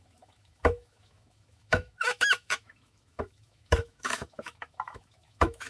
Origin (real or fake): fake